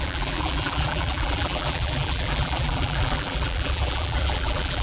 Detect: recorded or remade remade